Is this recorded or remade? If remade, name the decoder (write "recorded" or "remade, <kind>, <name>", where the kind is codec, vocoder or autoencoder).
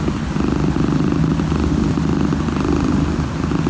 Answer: recorded